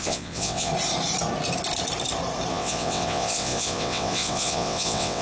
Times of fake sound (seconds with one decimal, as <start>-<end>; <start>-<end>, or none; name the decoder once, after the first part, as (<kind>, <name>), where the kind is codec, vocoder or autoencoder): 0.0-0.7 (vocoder, WaveNeXt); 2.5-5.2